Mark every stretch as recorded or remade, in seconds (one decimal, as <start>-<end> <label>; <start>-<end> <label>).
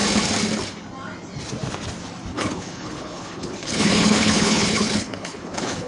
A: 0.0-2.3 recorded; 2.3-5.9 remade